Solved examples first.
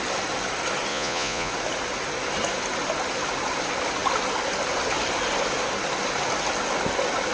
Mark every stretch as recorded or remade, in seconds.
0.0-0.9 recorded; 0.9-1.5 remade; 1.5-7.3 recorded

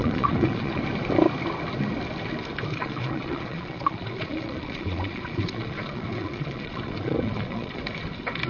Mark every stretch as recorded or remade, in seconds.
0.0-0.8 remade; 0.8-2.7 recorded; 2.7-7.8 remade; 7.8-8.5 recorded

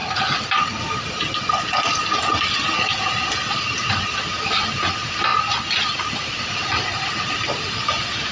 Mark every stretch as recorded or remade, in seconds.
0.0-1.5 remade; 1.5-8.3 recorded

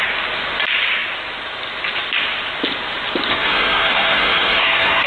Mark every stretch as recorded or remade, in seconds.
0.0-3.3 recorded; 3.3-5.1 remade

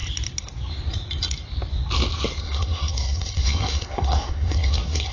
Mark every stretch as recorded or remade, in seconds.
0.0-2.4 recorded; 2.4-5.1 remade

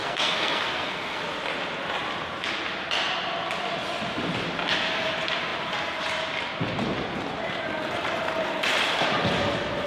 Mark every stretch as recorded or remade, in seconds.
0.0-1.2 remade; 1.2-9.9 recorded

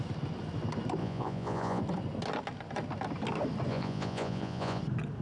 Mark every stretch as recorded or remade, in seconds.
0.0-1.0 recorded; 1.0-1.8 remade; 1.8-3.7 recorded; 3.7-4.8 remade; 4.8-5.2 recorded